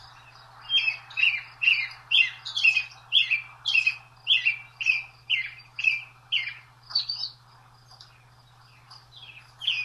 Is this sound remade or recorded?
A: recorded